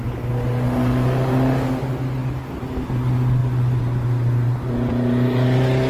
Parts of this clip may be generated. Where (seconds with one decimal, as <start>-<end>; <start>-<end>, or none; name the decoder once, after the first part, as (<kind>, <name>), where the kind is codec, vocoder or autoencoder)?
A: none